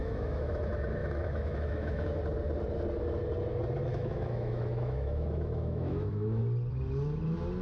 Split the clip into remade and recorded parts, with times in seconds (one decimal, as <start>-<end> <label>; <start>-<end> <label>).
0.0-0.6 remade; 0.6-1.0 recorded; 1.0-2.2 remade; 2.2-3.9 recorded; 3.9-6.4 remade; 6.4-7.6 recorded